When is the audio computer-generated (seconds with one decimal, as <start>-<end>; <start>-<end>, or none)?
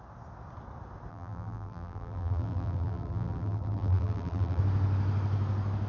1.1-4.6